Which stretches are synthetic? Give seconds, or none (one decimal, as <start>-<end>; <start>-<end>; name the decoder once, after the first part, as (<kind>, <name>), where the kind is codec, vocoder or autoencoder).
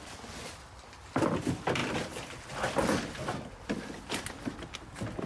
none